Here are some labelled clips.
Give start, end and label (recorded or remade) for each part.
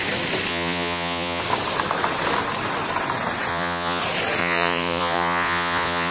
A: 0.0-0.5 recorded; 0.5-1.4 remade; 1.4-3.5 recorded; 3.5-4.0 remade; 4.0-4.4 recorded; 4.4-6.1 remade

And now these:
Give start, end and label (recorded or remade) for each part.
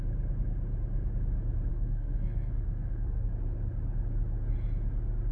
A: 0.0-1.7 recorded; 1.7-3.3 remade; 3.3-5.3 recorded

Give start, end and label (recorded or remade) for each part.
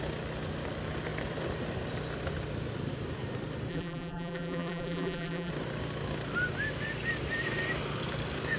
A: 0.0-3.7 recorded; 3.7-5.5 remade; 5.5-8.6 recorded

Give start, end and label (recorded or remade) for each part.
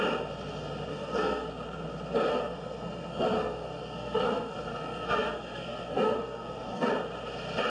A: 0.0-0.9 recorded; 0.9-1.5 remade; 1.5-2.3 recorded; 2.3-6.9 remade; 6.9-7.7 recorded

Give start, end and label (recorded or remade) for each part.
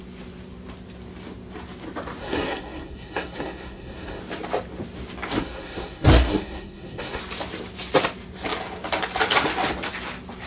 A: 0.0-2.2 recorded; 2.2-4.2 remade; 4.2-5.4 recorded; 5.4-7.2 remade; 7.2-10.5 recorded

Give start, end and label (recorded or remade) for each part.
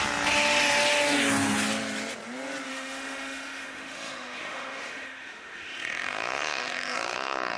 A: 0.0-2.7 recorded; 2.7-7.6 remade